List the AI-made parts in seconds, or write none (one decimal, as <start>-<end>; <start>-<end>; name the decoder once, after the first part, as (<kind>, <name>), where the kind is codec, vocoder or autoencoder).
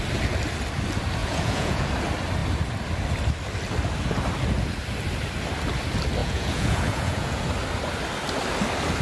1.2-1.9 (vocoder, Vocos); 6.2-7.4